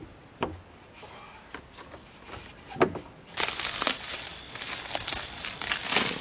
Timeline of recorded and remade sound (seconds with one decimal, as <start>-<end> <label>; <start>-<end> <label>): 0.0-6.2 recorded